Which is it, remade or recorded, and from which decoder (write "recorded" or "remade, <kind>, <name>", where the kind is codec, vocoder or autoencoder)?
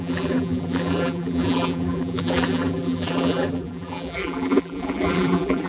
remade, vocoder, BigVGAN v2